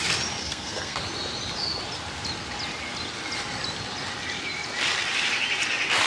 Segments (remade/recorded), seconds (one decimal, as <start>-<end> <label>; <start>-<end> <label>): 0.0-0.4 recorded; 0.4-1.0 remade; 1.0-6.1 recorded